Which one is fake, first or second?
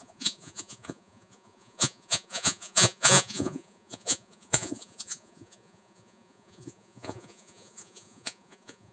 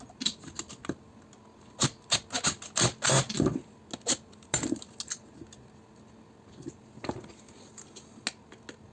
first